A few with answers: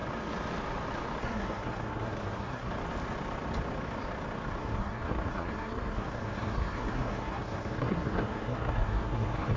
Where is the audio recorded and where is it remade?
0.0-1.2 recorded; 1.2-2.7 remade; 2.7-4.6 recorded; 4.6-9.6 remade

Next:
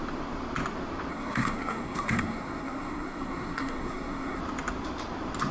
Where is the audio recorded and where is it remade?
0.0-1.1 recorded; 1.1-4.4 remade; 4.4-5.5 recorded

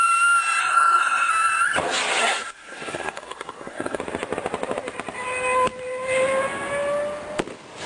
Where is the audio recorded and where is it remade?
0.0-0.6 recorded; 0.6-1.3 remade; 1.3-2.2 recorded; 2.2-4.0 remade; 4.0-7.9 recorded